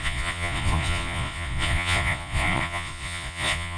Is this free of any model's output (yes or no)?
no